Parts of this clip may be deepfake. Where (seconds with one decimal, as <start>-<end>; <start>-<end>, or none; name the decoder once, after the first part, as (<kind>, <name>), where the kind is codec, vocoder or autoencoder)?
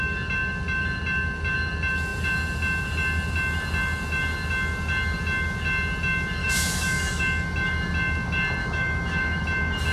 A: 6.4-7.2 (autoencoder, DAC-VAE); 8.6-9.4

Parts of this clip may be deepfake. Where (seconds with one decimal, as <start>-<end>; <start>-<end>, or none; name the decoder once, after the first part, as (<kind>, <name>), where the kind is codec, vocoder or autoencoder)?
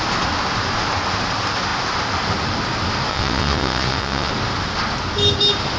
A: 3.1-4.3 (vocoder, WaveNeXt)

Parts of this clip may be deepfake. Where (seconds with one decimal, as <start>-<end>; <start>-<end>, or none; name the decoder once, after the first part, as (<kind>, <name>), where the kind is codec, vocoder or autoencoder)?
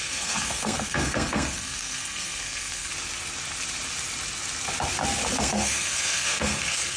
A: 0.0-2.9 (codec, SNAC); 5.4-7.0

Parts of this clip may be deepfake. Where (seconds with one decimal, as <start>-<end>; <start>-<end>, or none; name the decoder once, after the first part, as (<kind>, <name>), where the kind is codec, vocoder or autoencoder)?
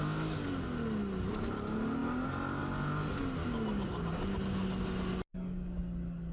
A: 3.4-4.4 (codec, DAC); 5.3-5.8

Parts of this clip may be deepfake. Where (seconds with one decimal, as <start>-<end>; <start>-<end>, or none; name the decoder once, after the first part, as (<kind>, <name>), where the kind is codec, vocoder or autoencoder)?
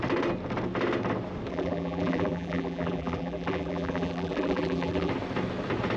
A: 1.5-5.1 (vocoder, BigVGAN v2)